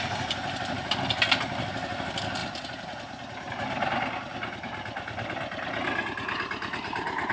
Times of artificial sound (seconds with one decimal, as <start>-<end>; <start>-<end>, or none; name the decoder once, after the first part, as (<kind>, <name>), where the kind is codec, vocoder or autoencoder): none